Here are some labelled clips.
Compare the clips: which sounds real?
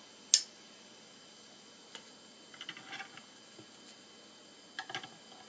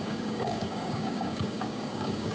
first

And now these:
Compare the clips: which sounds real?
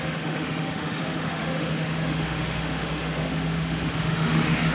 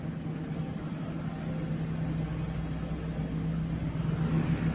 second